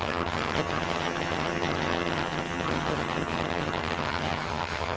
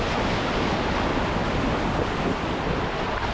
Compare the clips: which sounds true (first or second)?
second